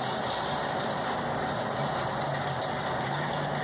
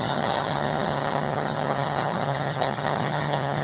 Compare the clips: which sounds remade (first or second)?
second